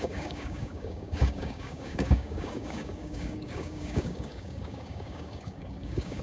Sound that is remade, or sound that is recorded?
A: remade